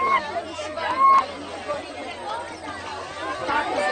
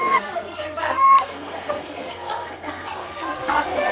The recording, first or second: first